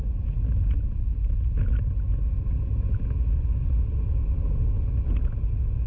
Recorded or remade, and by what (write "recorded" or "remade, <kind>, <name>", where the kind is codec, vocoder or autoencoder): recorded